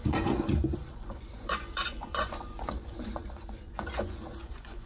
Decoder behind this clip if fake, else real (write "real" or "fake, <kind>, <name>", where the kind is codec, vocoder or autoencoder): fake, vocoder, Vocos